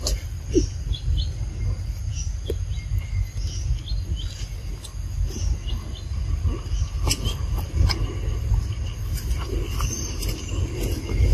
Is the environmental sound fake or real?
real